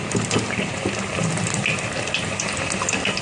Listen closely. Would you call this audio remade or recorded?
recorded